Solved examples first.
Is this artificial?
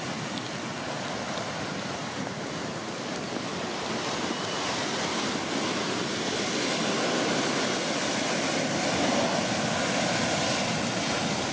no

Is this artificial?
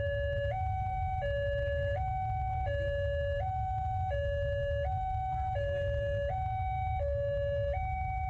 no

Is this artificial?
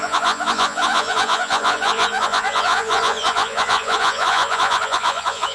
yes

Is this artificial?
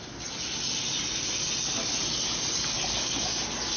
no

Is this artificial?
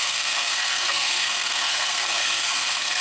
yes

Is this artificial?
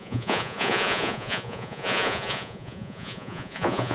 yes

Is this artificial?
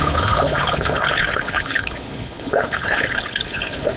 yes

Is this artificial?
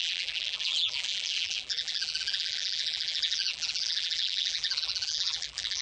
yes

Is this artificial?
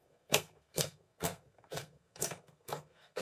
yes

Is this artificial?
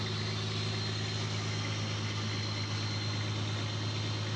no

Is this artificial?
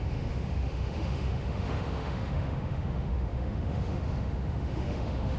yes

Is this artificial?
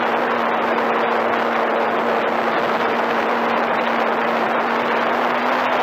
no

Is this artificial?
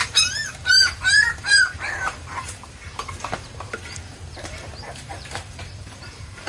yes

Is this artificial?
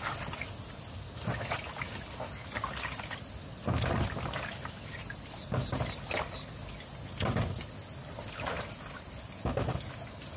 no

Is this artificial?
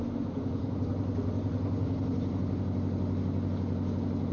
no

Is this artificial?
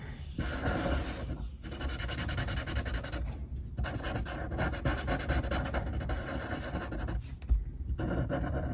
no